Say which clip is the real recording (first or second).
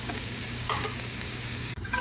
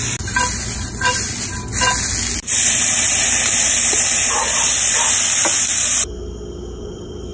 second